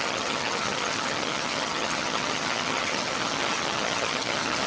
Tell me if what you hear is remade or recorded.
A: remade